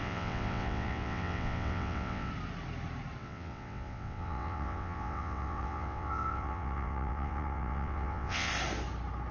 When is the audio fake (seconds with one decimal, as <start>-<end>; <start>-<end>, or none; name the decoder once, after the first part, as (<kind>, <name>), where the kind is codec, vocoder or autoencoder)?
0.0-2.3 (vocoder, WaveNeXt); 3.2-8.5